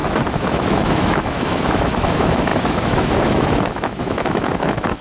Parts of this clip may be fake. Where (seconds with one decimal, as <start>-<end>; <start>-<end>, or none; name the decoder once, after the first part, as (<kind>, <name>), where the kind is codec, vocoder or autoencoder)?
0.0-5.0 (autoencoder, DAC-VAE)